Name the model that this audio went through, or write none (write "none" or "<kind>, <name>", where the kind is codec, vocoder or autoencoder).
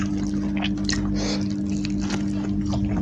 none